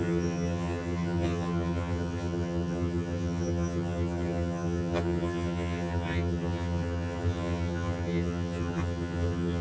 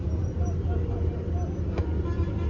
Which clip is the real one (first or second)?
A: second